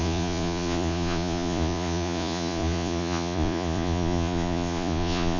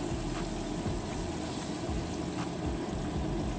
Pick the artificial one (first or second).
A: first